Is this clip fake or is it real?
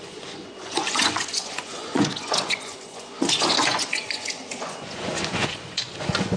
fake